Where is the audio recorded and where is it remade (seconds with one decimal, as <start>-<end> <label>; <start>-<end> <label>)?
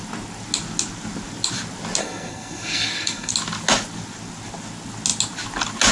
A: 0.0-2.0 recorded; 2.0-3.3 remade; 3.3-5.9 recorded